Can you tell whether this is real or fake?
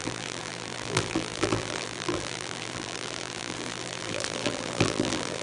fake